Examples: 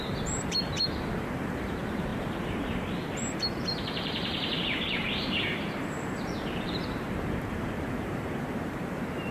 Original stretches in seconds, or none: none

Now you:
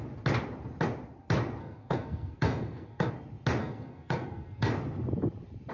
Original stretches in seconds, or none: 0.0-1.6; 3.1-3.6; 4.7-5.7

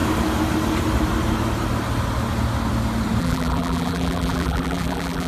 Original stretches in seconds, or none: 0.0-3.2

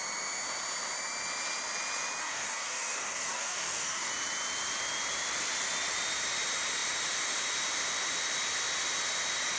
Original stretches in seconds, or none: 0.0-2.2; 4.1-9.6